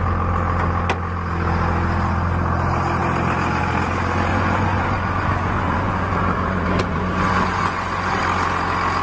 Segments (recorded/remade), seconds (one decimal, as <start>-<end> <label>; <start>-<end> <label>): 0.0-4.3 recorded; 4.3-8.2 remade; 8.2-9.0 recorded